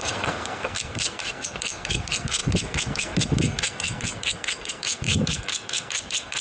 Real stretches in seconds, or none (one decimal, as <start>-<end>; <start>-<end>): none